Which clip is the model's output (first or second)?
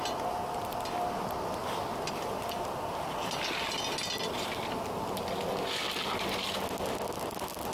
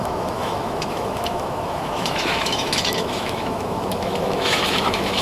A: second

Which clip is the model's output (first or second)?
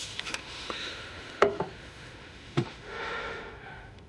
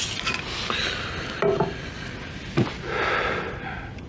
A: first